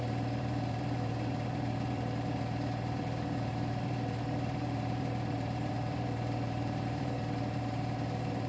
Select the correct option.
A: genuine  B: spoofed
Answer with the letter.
B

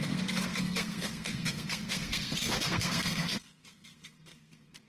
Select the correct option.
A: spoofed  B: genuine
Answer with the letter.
A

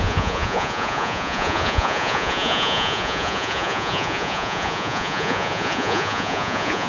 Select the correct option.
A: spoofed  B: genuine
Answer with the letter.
A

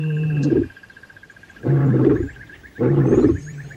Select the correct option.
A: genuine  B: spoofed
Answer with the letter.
B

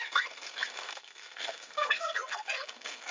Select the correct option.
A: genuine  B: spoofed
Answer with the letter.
B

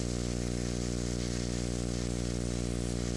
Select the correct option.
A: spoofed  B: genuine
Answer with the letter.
B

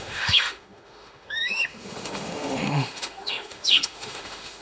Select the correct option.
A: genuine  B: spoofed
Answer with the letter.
B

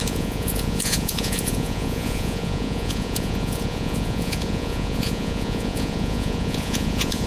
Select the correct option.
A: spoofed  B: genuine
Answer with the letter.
A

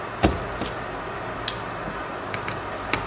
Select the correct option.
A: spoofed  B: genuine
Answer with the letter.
B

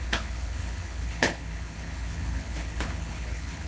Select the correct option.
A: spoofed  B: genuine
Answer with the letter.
A